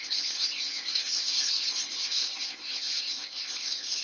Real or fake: fake